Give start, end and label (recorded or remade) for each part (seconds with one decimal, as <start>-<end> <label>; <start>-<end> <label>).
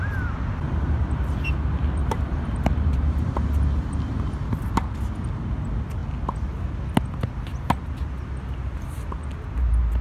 0.0-2.0 recorded; 2.0-3.3 remade; 3.3-10.0 recorded